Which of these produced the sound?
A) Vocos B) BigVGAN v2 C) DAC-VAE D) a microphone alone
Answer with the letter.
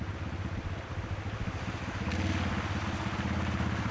D